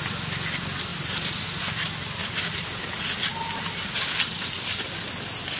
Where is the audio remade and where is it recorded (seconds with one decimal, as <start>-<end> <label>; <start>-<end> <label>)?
0.0-0.9 recorded; 0.9-1.6 remade; 1.6-5.6 recorded